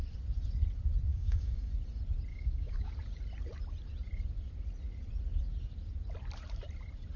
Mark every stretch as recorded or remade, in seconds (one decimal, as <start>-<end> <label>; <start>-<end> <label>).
0.0-1.1 recorded; 1.1-1.7 remade; 1.7-2.3 recorded; 2.3-2.9 remade; 2.9-7.2 recorded